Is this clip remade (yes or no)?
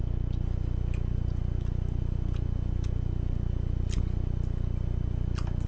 no